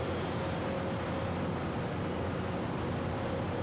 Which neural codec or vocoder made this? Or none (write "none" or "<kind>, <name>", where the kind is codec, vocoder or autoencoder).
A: none